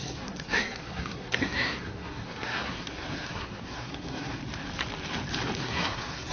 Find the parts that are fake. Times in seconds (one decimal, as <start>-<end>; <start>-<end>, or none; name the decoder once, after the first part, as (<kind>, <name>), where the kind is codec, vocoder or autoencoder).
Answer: 0.0-4.4 (codec, SNAC); 5.6-6.3